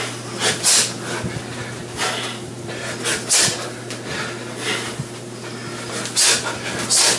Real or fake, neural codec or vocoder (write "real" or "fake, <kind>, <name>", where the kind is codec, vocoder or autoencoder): real